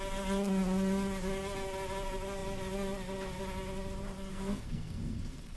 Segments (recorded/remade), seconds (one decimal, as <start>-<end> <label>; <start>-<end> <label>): 0.0-4.3 recorded; 4.3-5.6 remade